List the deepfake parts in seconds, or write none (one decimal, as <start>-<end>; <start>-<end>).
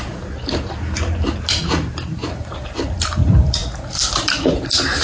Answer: 0.0-3.6; 4.1-5.0